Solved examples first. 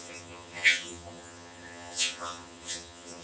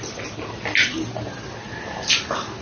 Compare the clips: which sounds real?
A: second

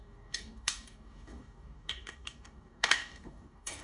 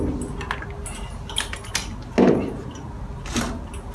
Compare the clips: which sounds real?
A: second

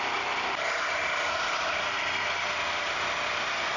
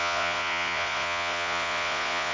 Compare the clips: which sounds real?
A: first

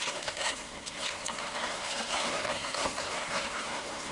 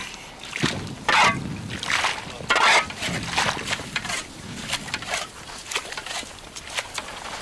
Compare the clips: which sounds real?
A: second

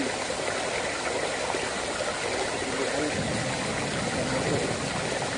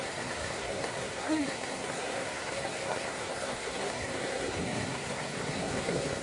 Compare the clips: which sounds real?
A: first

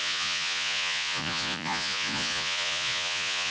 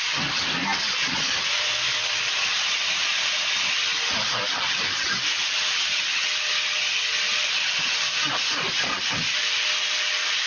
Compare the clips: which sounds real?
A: second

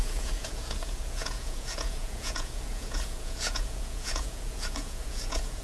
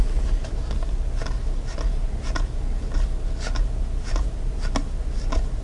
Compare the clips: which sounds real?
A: second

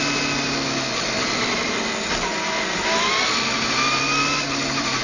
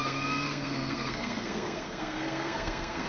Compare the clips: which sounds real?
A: first